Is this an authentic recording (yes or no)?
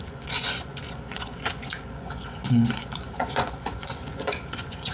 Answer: no